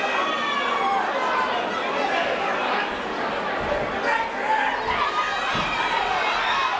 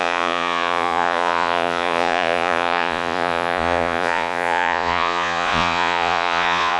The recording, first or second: first